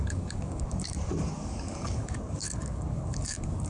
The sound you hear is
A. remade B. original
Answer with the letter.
A